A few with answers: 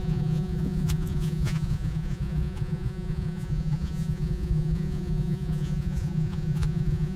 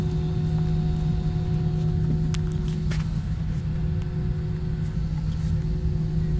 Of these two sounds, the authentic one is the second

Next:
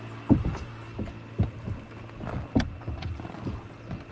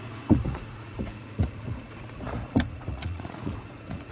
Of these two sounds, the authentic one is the first